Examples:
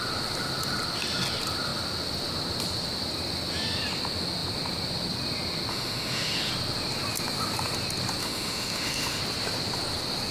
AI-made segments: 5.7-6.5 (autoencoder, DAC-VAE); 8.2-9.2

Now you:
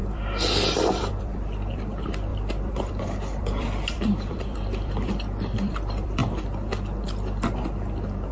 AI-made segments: 0.0-6.2 (vocoder, BigVGAN v2)

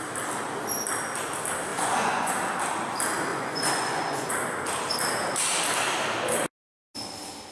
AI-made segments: 1.7-2.3 (vocoder, Vocos); 3.3-4.3

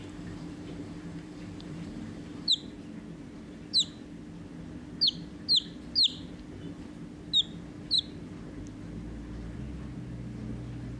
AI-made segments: 0.0-2.5 (vocoder, BigVGAN v2)

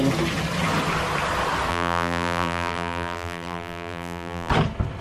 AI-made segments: 1.7-4.5 (vocoder, BigVGAN v2)

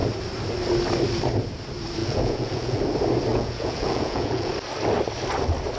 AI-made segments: 2.0-2.8 (vocoder, Vocos); 3.3-4.5

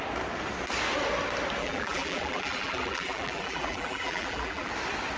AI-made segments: 1.6-4.7 (vocoder, BigVGAN v2)